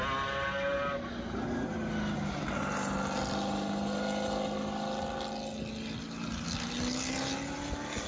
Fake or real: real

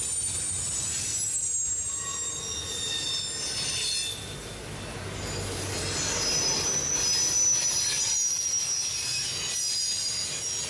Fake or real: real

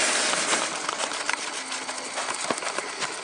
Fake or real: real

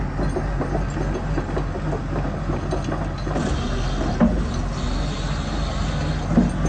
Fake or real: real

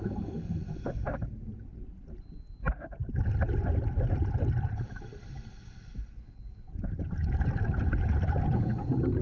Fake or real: real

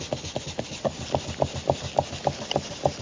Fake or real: real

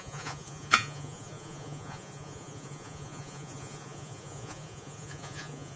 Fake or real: fake